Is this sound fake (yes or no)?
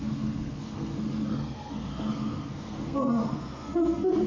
yes